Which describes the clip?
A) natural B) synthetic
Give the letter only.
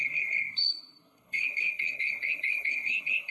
B